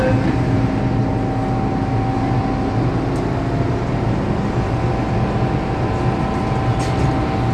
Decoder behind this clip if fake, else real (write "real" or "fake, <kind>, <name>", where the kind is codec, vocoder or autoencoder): real